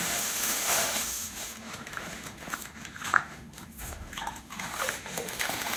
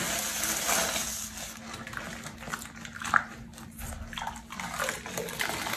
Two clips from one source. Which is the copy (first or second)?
first